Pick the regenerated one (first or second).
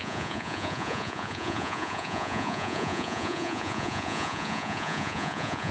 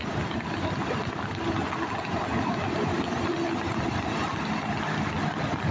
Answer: first